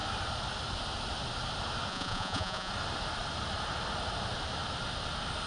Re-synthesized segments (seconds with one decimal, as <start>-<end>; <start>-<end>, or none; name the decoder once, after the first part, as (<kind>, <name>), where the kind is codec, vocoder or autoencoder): 1.9-2.7 (vocoder, Vocos)